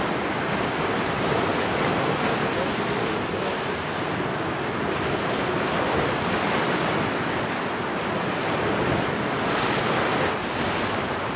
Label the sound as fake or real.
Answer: real